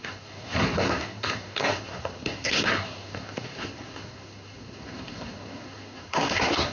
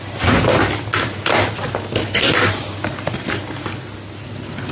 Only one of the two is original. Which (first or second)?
second